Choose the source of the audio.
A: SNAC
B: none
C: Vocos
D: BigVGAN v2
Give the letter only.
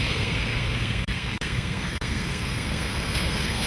A